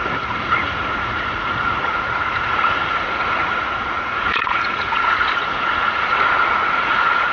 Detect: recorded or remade remade